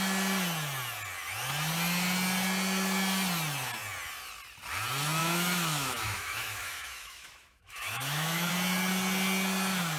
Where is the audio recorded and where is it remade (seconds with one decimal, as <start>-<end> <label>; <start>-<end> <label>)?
0.0-5.2 recorded; 5.2-8.5 remade; 8.5-10.0 recorded